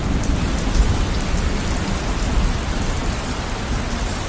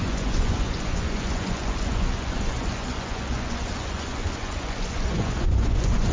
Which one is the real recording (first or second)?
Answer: first